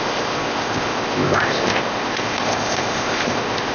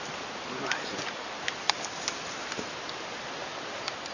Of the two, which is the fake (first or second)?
first